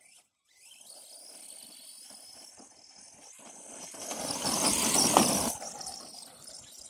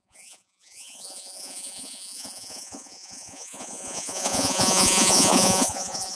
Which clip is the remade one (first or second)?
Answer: second